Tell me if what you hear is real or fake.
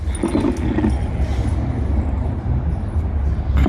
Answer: real